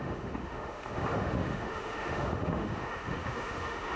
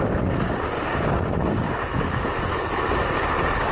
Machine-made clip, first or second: first